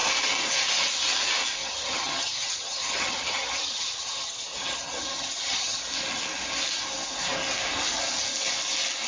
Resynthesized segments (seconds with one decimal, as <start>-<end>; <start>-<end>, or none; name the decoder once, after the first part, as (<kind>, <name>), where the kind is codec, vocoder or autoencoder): 1.6-5.8 (vocoder, HiFi-GAN)